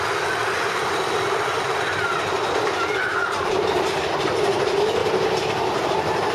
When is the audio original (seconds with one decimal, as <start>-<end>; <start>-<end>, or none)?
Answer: 0.0-3.1; 4.3-5.0